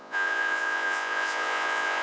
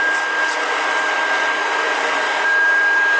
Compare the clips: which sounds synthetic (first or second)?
first